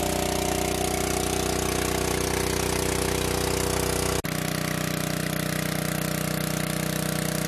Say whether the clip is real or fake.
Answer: real